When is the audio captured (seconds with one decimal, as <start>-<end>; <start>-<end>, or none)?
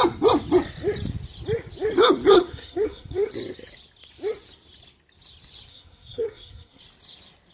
0.0-2.3; 3.3-5.7; 6.8-7.5